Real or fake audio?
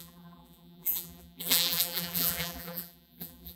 fake